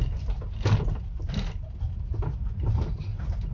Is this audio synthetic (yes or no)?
no